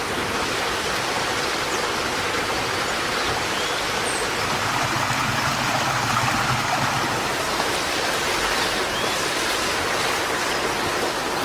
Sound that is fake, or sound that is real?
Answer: real